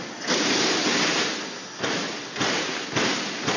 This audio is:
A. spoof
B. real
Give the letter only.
B